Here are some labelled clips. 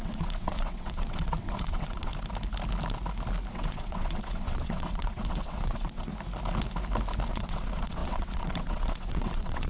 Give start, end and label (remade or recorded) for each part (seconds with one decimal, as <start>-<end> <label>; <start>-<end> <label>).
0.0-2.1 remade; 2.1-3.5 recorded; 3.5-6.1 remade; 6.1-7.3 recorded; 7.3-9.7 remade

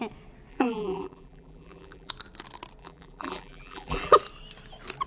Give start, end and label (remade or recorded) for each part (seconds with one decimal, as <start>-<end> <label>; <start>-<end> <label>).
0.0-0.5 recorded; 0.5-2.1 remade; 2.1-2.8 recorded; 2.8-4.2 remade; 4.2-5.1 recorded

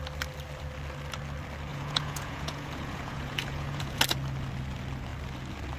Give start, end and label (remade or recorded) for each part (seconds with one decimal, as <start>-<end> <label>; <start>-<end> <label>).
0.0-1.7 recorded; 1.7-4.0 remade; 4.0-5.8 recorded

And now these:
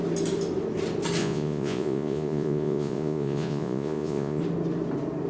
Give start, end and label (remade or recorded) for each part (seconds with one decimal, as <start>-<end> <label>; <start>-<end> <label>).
0.0-1.2 recorded; 1.2-4.4 remade; 4.4-5.3 recorded